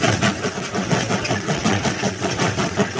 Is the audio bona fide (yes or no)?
no